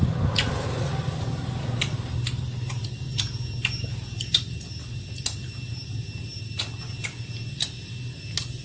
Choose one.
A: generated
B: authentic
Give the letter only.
B